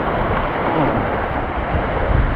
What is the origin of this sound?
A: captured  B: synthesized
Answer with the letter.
A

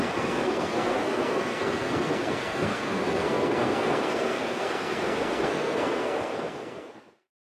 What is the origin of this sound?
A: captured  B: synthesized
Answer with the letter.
B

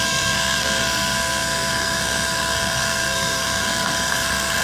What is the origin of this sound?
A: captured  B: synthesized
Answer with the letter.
B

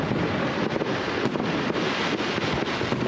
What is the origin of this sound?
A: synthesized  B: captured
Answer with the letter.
B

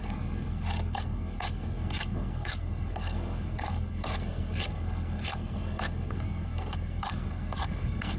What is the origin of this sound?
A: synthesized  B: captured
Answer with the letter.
A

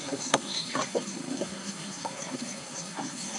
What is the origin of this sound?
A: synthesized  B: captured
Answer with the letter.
A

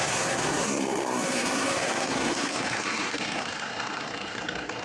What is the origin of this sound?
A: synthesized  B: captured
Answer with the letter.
A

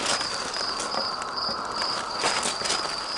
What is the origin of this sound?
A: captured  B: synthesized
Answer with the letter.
A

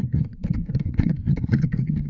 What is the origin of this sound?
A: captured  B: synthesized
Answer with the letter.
B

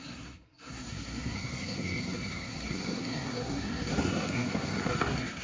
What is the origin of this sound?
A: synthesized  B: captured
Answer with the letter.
A